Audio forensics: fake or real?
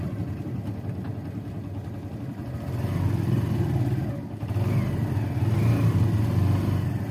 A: real